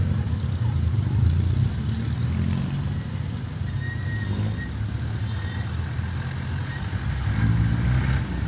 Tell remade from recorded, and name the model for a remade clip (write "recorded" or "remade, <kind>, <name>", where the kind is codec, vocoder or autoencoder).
recorded